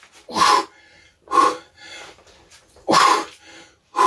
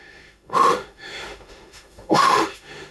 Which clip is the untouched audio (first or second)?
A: first